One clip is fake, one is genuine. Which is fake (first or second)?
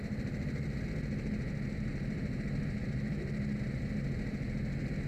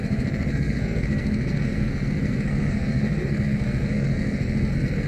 second